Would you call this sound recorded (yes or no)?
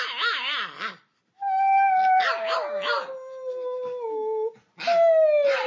yes